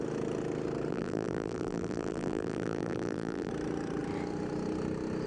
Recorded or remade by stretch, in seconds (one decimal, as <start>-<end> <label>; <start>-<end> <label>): 0.0-0.9 recorded; 0.9-3.5 remade; 3.5-5.3 recorded